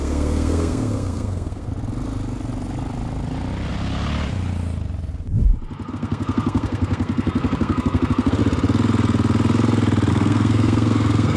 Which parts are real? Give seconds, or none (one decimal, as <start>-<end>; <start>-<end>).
1.7-5.9; 8.4-10.1